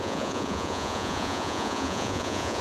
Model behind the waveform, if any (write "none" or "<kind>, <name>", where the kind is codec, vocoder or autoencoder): vocoder, Vocos